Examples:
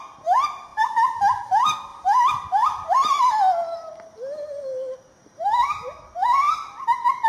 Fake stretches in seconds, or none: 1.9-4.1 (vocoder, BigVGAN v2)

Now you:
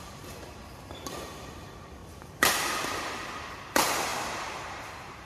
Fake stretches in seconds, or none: 0.0-2.0 (vocoder, BigVGAN v2); 3.6-5.3

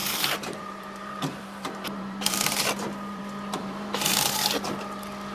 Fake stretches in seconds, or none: 0.0-3.2 (vocoder, BigVGAN v2); 3.6-4.2

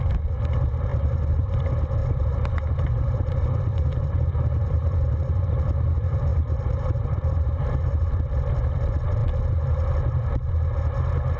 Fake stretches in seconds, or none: 0.9-1.6 (vocoder, BigVGAN v2); 2.0-5.5; 6.3-8.1

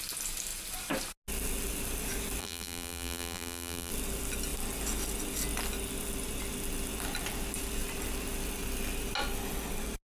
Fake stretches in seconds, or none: 2.4-3.9 (vocoder, BigVGAN v2)

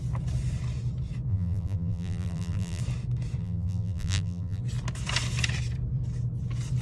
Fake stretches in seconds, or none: 1.3-2.8 (vocoder, BigVGAN v2); 3.4-4.6

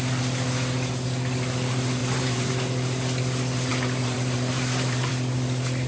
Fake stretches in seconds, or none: 2.0-2.5 (vocoder, BigVGAN v2); 3.7-5.1

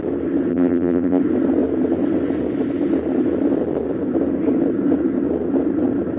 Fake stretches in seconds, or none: 0.5-1.2 (vocoder, BigVGAN v2)